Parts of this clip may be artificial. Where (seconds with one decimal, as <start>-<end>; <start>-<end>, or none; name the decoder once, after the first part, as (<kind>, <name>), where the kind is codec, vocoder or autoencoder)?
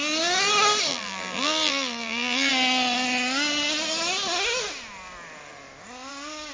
0.9-2.5 (vocoder, BigVGAN v2)